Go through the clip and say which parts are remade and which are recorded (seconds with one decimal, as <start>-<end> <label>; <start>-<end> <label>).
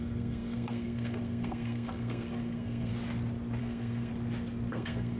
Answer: 0.0-2.9 remade; 2.9-3.6 recorded; 3.6-4.1 remade; 4.1-4.7 recorded; 4.7-5.2 remade